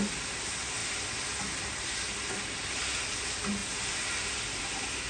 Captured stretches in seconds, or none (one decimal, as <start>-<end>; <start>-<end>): 0.0-5.1